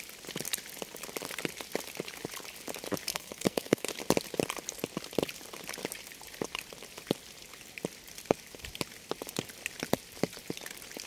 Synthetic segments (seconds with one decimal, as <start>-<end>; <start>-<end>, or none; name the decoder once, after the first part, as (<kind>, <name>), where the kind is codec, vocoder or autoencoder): 3.1-3.9 (codec, SNAC)